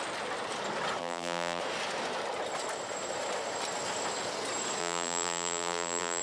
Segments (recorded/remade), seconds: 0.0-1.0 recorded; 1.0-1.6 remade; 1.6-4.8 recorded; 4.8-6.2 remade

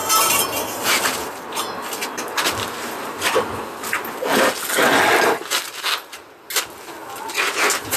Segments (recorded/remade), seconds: 0.0-4.4 remade; 4.4-8.0 recorded

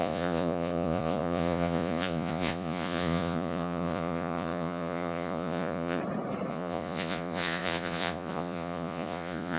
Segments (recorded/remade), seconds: 0.0-6.0 remade; 6.0-6.5 recorded; 6.5-9.6 remade